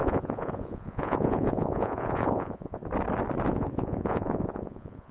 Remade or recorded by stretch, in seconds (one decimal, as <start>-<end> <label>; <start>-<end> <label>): 0.0-2.8 remade; 2.8-3.5 recorded; 3.5-5.1 remade